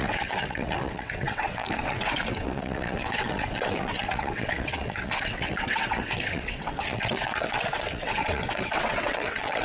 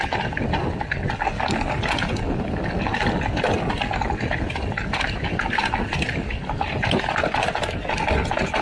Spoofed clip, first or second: first